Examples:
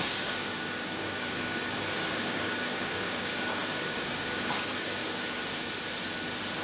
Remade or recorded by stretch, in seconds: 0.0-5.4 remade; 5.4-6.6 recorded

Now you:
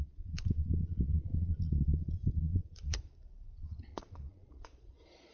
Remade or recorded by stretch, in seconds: 0.0-5.3 remade